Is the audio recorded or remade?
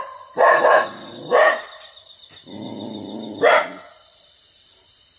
recorded